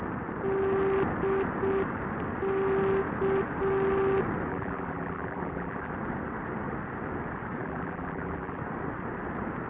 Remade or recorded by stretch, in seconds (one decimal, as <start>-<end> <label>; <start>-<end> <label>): 0.0-4.5 recorded; 4.5-5.9 remade; 5.9-7.6 recorded; 7.6-8.6 remade; 8.6-9.7 recorded